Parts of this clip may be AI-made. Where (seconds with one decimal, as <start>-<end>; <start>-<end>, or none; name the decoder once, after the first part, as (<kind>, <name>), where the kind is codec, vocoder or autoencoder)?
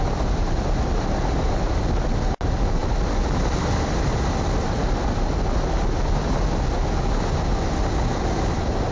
none